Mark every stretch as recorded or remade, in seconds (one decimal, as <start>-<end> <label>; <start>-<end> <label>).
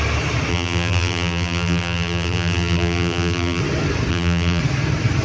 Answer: 0.0-0.5 recorded; 0.5-3.6 remade; 3.6-4.1 recorded; 4.1-4.6 remade; 4.6-5.2 recorded